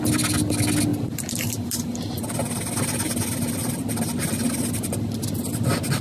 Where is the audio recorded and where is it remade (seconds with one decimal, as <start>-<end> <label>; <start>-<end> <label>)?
0.0-6.0 recorded